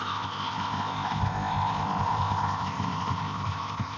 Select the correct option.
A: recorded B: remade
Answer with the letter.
B